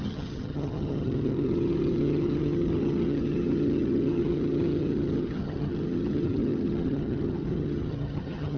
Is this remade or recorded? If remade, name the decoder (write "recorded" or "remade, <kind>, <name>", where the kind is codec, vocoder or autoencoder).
remade, vocoder, HiFi-GAN